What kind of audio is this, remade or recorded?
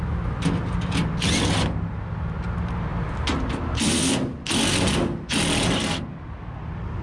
recorded